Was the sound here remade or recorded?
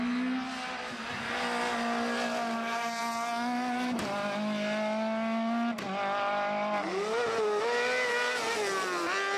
recorded